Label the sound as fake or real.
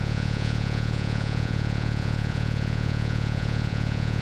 fake